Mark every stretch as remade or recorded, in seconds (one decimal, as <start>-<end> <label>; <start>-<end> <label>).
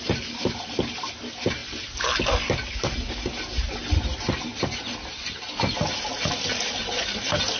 0.0-7.6 recorded